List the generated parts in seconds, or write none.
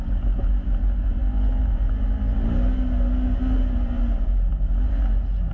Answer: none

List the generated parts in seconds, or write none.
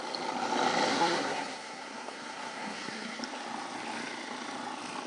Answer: 0.9-3.2 (codec, SNAC)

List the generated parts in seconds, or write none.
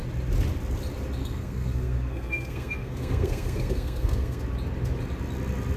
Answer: 1.2-4.4 (codec, SNAC)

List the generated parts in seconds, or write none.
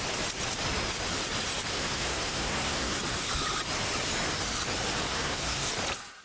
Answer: 1.7-3.0 (codec, SNAC); 5.1-5.7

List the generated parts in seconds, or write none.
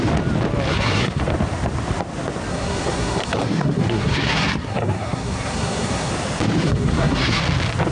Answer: 0.7-1.2 (codec, SNAC); 2.5-6.1; 6.6-7.4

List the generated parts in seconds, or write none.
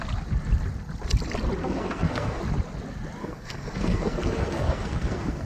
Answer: 1.6-2.4 (codec, SNAC); 3.2-5.5